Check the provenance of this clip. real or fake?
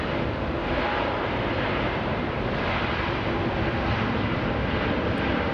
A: real